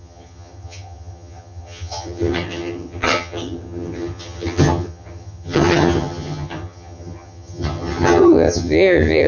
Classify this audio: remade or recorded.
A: remade